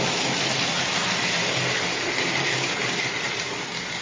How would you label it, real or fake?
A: real